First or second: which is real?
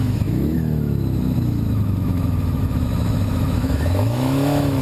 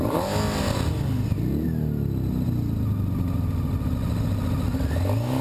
second